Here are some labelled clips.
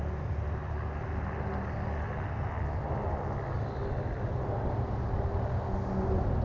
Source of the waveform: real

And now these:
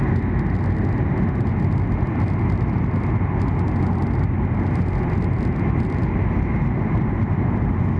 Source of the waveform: real